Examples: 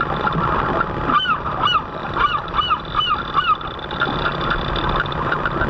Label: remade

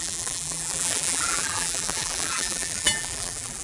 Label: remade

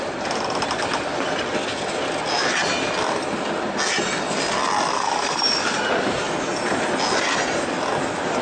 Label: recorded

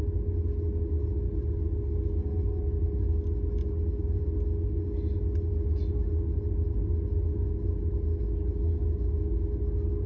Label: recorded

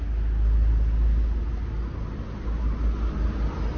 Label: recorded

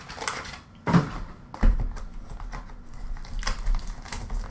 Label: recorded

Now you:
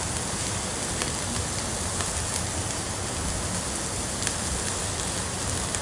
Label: recorded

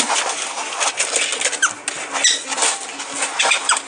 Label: recorded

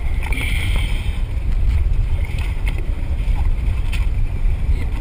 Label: remade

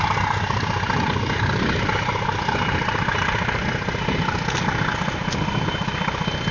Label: recorded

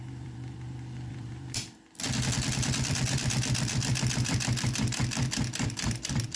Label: remade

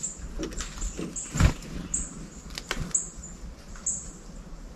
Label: recorded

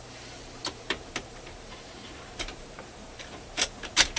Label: remade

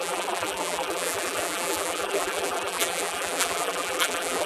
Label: remade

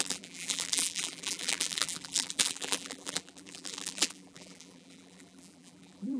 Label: remade